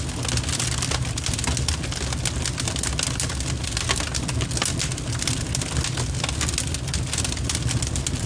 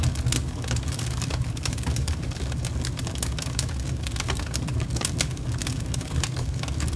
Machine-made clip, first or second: second